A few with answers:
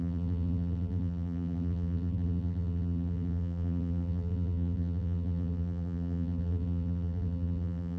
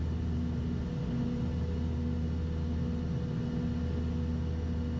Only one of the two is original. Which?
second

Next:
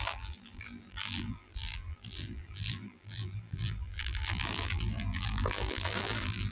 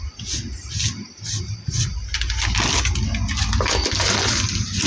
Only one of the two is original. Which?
second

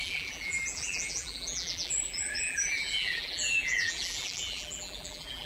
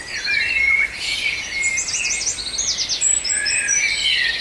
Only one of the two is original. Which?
second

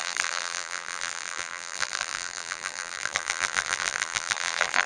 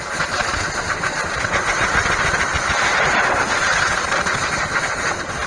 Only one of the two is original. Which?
second